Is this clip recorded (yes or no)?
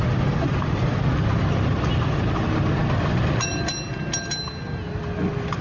yes